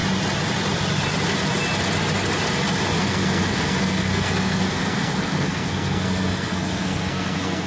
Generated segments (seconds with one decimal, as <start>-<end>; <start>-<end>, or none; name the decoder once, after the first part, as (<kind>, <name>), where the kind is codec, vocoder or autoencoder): 3.0-7.7 (codec, SNAC)